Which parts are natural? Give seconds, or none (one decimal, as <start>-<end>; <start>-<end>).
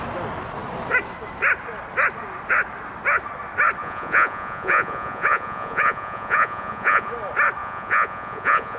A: 0.0-3.8; 7.1-7.6